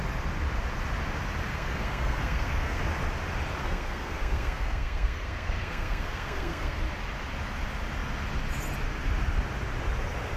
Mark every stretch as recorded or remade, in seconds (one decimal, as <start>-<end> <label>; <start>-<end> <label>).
0.0-1.5 recorded; 1.5-2.8 remade; 2.8-3.6 recorded; 3.6-6.8 remade; 6.8-10.4 recorded